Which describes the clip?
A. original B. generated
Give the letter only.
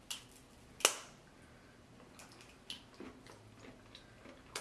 A